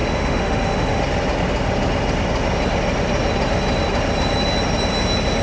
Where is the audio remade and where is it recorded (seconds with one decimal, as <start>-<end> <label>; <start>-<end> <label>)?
0.0-1.0 remade; 1.0-5.4 recorded